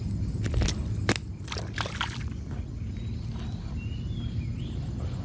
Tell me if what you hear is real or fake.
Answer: real